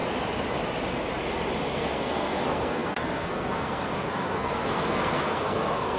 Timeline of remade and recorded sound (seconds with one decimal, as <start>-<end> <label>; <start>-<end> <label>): 0.0-1.7 recorded; 1.7-6.0 remade